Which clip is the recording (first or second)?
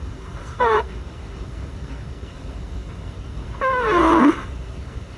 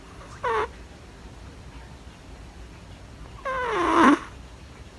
second